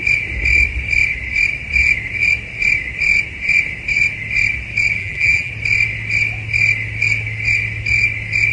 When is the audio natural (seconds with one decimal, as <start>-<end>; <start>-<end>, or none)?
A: 0.0-5.0; 5.5-8.5